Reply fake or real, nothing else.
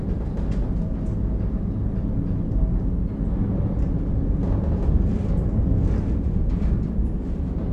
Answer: real